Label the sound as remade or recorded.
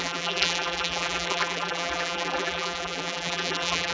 remade